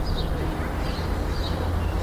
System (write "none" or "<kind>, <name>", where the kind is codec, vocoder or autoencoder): none